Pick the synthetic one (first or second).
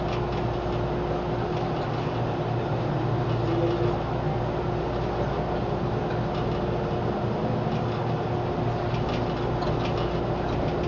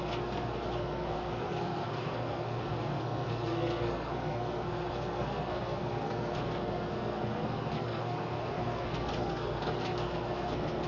second